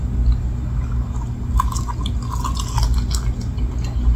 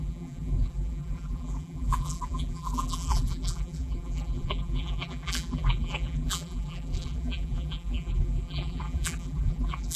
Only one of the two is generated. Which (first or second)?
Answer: second